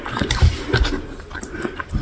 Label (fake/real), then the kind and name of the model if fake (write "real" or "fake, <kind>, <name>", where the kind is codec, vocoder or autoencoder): fake, vocoder, BigVGAN v2